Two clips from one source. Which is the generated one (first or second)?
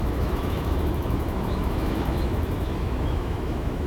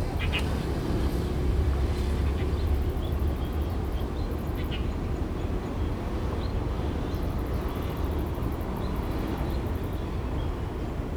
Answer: first